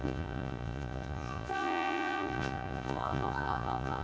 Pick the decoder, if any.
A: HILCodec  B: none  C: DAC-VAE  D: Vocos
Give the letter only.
D